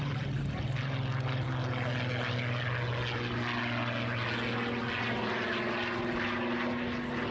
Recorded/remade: recorded